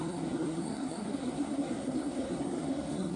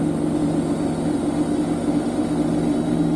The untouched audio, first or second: second